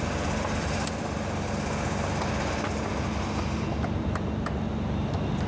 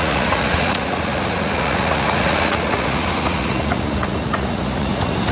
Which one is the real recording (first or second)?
first